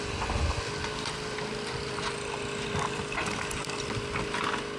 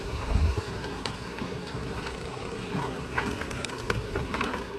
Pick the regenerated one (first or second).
second